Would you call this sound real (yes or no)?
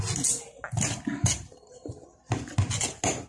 yes